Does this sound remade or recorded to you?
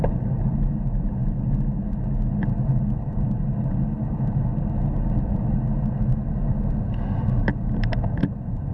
recorded